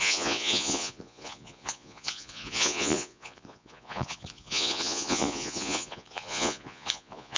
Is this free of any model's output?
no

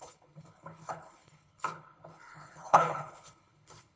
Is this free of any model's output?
no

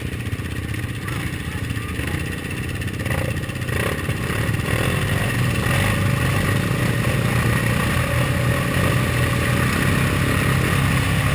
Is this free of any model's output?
yes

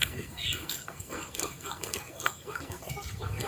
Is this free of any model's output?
no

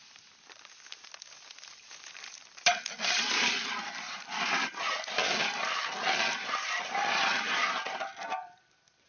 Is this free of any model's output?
no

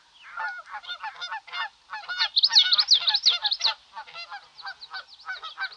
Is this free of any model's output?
yes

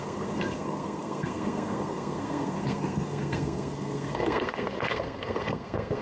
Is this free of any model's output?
no